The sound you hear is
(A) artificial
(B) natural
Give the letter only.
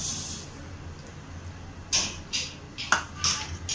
B